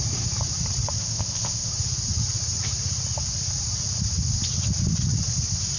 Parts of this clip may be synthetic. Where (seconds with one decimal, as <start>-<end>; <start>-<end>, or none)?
1.0-1.7